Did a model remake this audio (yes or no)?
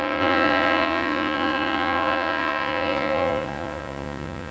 yes